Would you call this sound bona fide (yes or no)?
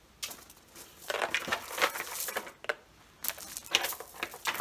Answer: yes